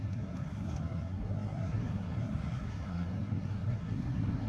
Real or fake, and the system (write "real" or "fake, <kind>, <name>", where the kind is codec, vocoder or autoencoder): fake, codec, SNAC